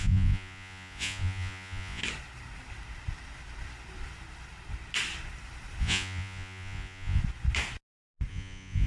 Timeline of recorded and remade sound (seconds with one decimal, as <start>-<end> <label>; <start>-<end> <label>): 0.0-2.0 remade; 2.0-5.8 recorded; 5.8-7.2 remade; 7.2-8.3 recorded; 8.3-8.9 remade